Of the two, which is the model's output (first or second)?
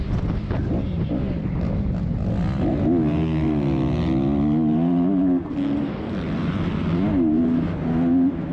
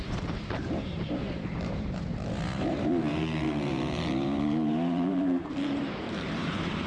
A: second